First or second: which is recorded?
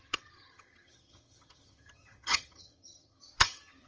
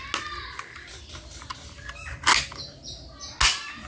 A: second